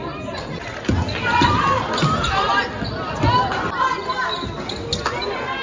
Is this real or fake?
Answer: real